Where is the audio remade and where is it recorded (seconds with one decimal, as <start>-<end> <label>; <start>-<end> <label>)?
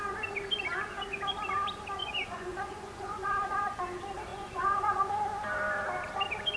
0.0-2.0 recorded; 2.0-3.8 remade; 3.8-4.3 recorded; 4.3-5.1 remade; 5.1-6.6 recorded